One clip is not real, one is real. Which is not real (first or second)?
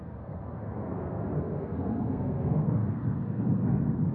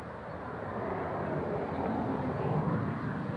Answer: first